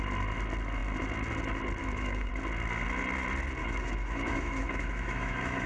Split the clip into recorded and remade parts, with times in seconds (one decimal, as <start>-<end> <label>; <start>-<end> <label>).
0.0-1.8 recorded; 1.8-2.3 remade; 2.3-3.6 recorded; 3.6-5.7 remade